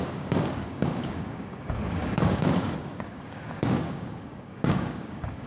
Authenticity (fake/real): fake